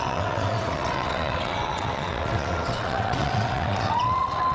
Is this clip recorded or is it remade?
remade